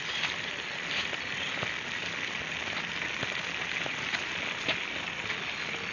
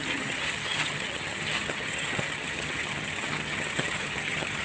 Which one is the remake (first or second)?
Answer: second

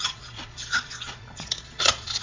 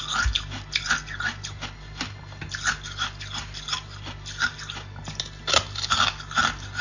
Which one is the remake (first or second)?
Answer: first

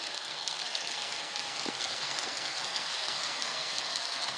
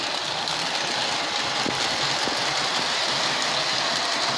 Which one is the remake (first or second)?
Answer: first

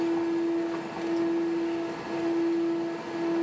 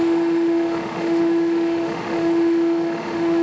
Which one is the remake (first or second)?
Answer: second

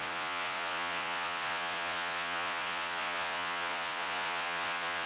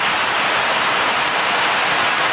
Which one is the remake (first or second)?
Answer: first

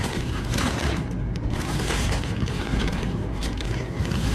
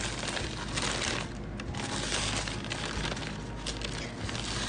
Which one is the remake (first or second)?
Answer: first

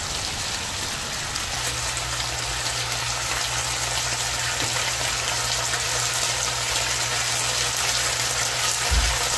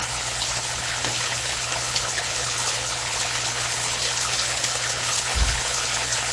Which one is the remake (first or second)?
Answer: second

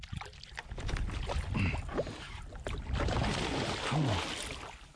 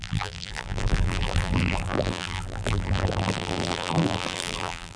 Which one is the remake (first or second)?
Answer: second